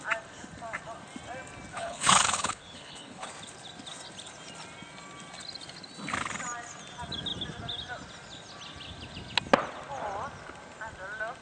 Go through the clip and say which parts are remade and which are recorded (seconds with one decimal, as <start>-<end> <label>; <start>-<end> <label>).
0.0-1.7 recorded; 1.7-3.3 remade; 3.3-11.4 recorded